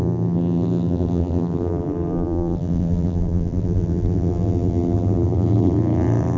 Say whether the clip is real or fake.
fake